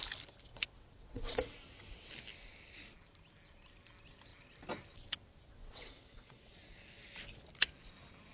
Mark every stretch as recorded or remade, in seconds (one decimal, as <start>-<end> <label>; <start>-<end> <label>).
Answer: 0.0-0.5 recorded; 0.5-2.1 remade; 2.1-5.6 recorded; 5.6-6.5 remade; 6.5-8.3 recorded